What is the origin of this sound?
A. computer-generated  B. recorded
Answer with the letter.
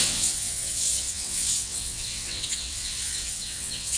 A